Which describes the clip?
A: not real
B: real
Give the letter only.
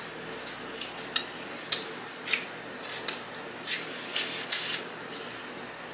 B